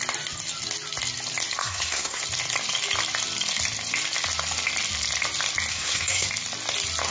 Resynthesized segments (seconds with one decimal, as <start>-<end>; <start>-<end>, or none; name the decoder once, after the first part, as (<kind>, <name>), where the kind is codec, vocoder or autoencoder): 1.6-2.2 (codec, SNAC); 5.7-6.3